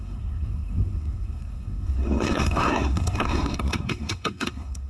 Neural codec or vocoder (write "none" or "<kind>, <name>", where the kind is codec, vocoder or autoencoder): codec, SNAC